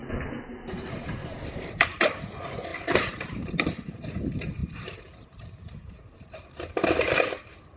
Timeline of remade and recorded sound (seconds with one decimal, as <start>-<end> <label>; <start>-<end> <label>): 0.0-1.2 recorded; 1.2-2.0 remade; 2.0-2.7 recorded; 2.7-3.6 remade; 3.6-4.6 recorded; 4.6-7.1 remade; 7.1-7.8 recorded